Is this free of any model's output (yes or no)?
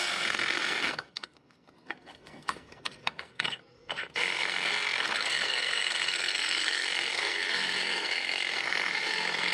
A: no